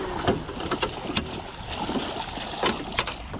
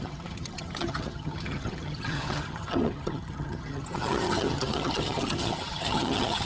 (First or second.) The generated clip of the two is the second